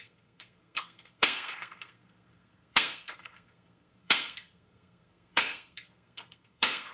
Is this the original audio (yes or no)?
no